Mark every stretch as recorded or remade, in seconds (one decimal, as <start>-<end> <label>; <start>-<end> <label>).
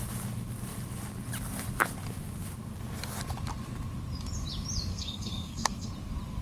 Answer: 0.0-4.9 recorded; 4.9-5.9 remade; 5.9-6.4 recorded